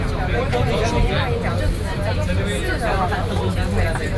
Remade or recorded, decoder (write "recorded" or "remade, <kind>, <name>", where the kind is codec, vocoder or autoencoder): recorded